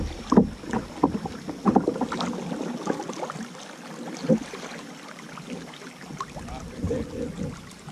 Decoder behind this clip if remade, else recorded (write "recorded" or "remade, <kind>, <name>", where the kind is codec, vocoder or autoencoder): recorded